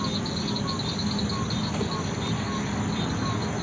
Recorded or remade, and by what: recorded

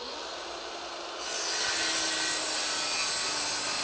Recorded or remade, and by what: recorded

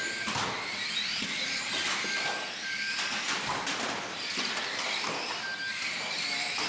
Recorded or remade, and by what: recorded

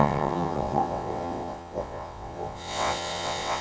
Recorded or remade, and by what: remade, vocoder, WaveNeXt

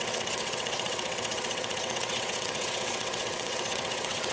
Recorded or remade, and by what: remade, vocoder, WaveNeXt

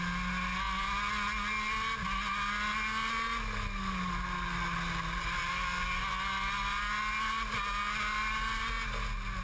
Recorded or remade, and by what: recorded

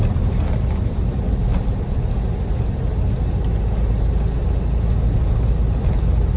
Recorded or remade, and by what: recorded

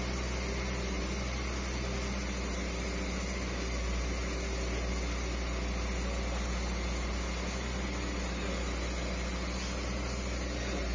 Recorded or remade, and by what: recorded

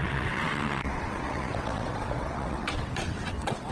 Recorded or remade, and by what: remade, vocoder, WaveNeXt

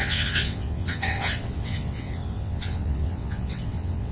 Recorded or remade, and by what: remade, vocoder, WaveNeXt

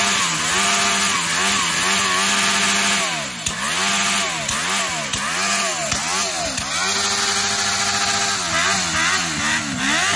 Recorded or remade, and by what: recorded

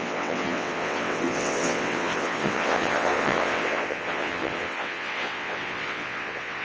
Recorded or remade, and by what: remade, vocoder, WaveNeXt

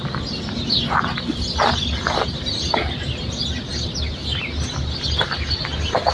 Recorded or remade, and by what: recorded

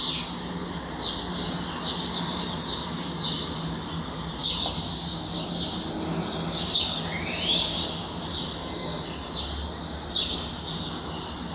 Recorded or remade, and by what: recorded